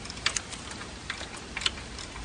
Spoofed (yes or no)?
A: no